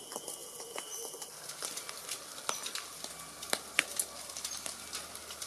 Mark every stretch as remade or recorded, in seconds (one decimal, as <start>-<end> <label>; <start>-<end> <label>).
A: 0.0-0.4 recorded; 0.4-1.3 remade; 1.3-3.9 recorded; 3.9-4.8 remade; 4.8-5.5 recorded